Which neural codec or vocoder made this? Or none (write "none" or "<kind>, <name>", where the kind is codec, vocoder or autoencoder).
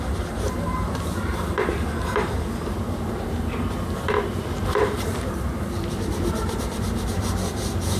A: vocoder, BigVGAN v2